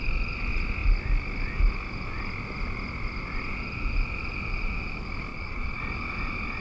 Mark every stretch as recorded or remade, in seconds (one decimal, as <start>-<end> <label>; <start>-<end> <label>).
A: 0.0-5.3 recorded; 5.3-5.8 remade; 5.8-6.6 recorded